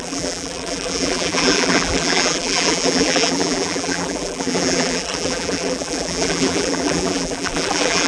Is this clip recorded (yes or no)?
no